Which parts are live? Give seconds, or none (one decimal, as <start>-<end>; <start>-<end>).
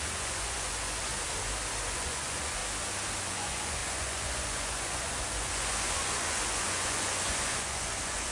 1.1-1.8; 2.6-3.2